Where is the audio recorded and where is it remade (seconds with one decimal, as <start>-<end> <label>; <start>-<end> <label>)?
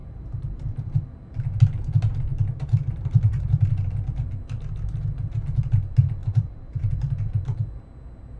0.0-0.9 remade; 0.9-2.3 recorded; 2.3-3.7 remade; 3.7-6.2 recorded; 6.2-6.8 remade; 6.8-8.4 recorded